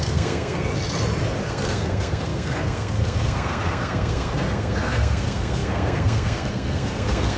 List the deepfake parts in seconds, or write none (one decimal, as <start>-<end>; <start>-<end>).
0.0-0.7; 1.4-7.4